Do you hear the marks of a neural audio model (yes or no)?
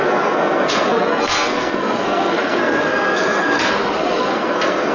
yes